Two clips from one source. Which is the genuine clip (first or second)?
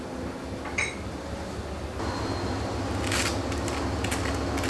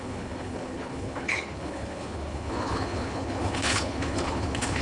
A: first